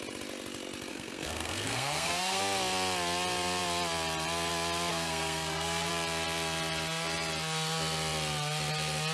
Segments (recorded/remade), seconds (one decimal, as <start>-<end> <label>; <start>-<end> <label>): 0.0-0.9 recorded; 0.9-2.4 remade; 2.4-4.9 recorded; 4.9-5.9 remade; 5.9-9.1 recorded